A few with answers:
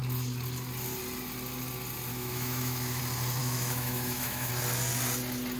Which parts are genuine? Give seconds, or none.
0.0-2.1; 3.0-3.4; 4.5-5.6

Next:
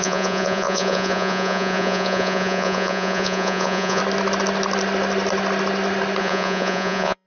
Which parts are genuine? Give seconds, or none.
4.0-6.2